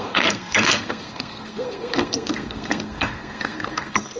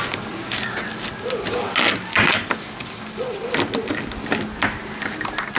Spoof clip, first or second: first